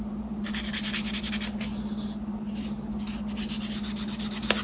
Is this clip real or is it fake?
real